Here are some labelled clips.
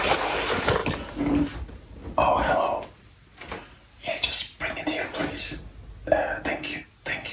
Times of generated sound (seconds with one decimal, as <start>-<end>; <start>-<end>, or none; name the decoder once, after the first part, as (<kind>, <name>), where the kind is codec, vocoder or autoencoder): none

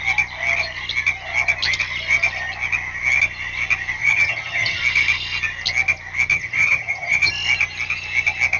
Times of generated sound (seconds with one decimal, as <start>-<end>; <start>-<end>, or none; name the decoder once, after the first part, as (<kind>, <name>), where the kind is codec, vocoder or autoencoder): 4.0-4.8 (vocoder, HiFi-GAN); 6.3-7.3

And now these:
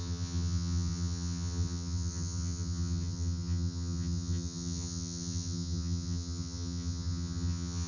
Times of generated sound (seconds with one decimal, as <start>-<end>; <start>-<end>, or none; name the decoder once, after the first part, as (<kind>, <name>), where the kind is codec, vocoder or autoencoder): 0.0-7.9 (vocoder, HiFi-GAN)

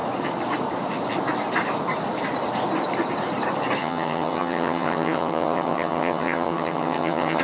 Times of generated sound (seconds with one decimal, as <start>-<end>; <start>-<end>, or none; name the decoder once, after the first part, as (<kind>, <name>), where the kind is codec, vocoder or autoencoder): 3.8-7.4 (vocoder, HiFi-GAN)

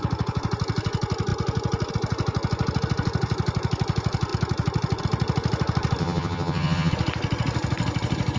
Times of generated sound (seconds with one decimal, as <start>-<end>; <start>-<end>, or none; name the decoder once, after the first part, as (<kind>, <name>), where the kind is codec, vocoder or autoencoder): 6.0-6.9 (vocoder, HiFi-GAN)

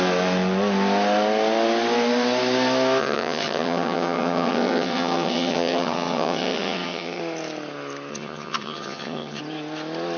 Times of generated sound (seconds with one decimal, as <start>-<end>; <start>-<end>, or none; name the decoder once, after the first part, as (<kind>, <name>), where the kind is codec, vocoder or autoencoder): 3.0-7.2 (vocoder, HiFi-GAN); 8.1-9.4

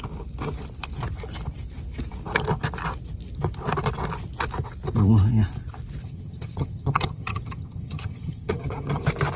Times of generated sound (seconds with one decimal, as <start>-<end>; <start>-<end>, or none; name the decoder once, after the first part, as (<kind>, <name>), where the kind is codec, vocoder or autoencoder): 6.0-9.0 (vocoder, HiFi-GAN)

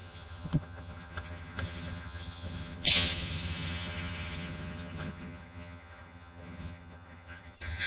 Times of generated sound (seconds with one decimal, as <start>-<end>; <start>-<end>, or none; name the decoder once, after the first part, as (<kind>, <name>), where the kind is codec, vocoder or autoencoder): 0.0-7.9 (vocoder, HiFi-GAN)